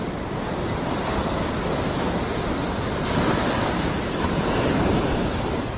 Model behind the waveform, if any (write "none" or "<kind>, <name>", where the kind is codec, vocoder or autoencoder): vocoder, BigVGAN v2